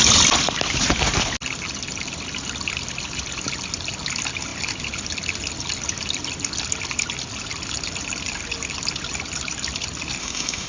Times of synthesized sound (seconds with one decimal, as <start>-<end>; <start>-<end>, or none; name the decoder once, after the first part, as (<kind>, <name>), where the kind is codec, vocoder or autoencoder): 10.2-10.7 (autoencoder, DAC-VAE)